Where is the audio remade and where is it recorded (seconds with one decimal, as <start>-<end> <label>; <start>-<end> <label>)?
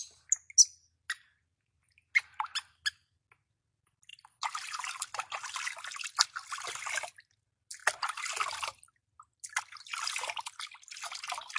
0.0-11.6 recorded